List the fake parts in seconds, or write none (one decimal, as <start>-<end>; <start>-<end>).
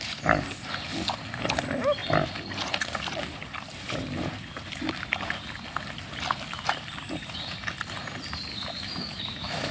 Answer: 8.5-9.7